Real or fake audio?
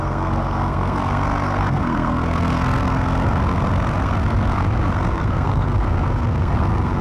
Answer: fake